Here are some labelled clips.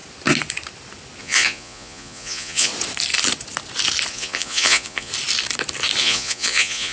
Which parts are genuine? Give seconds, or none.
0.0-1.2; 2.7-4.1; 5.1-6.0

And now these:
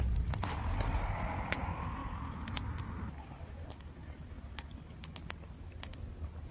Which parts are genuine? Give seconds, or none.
0.0-6.5

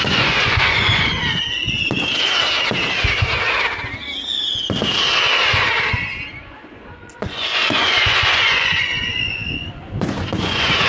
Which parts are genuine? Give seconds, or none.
1.2-6.3